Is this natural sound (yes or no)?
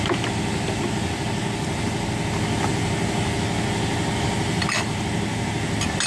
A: yes